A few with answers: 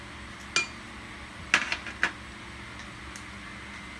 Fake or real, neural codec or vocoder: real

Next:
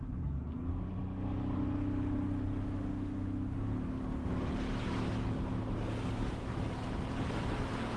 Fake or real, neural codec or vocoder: real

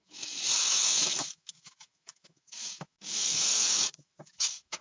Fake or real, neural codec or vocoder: fake, autoencoder, DAC-VAE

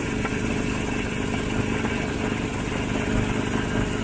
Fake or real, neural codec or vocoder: real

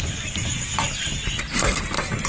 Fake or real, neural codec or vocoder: real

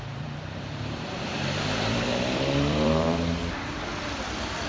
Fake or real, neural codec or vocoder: fake, vocoder, BigVGAN v2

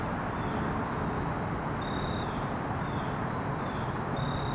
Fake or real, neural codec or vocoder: real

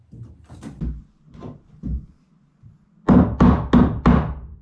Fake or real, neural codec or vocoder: real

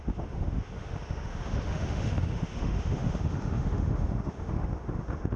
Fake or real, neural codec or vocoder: fake, autoencoder, DAC-VAE